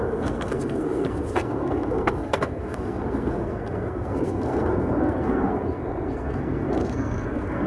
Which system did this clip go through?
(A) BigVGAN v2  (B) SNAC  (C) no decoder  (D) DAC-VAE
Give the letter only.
B